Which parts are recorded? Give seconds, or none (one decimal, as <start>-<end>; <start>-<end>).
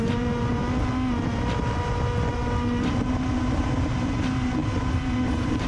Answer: 0.6-2.8